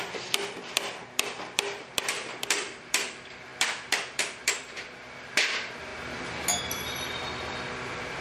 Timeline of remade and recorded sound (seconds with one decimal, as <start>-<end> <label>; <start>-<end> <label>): 0.0-5.9 remade; 5.9-6.6 recorded; 6.6-8.2 remade